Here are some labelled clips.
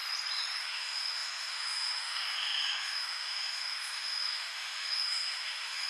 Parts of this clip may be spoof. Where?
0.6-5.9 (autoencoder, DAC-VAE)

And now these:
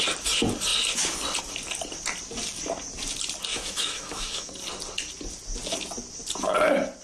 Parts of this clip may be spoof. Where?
3.5-4.5 (autoencoder, DAC-VAE)

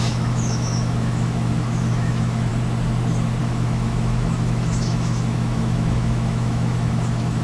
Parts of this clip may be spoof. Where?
0.0-2.5 (autoencoder, DAC-VAE); 3.4-7.4

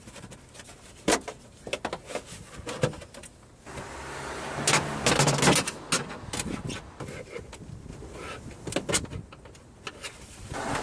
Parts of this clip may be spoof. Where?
none